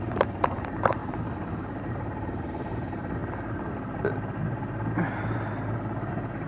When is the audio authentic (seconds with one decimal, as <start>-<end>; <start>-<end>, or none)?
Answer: 1.0-1.8; 3.2-6.1